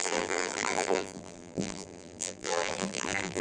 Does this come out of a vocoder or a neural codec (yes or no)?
yes